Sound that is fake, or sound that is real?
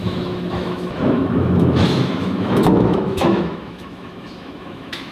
fake